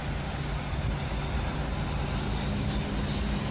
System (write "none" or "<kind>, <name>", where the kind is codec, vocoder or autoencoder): none